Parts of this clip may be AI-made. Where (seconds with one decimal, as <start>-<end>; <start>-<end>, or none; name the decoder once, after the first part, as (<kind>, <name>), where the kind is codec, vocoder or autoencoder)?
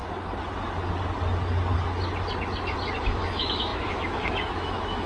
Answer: 3.0-5.1 (autoencoder, DAC-VAE)